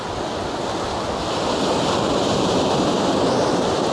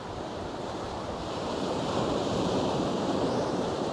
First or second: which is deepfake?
second